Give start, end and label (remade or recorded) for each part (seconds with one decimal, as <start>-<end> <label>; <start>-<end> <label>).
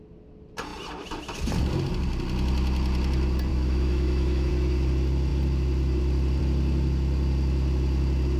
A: 0.0-3.5 recorded; 3.5-4.5 remade; 4.5-8.4 recorded